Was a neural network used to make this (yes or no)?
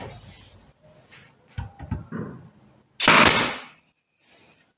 no